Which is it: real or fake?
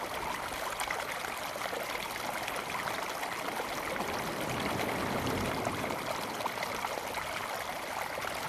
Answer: real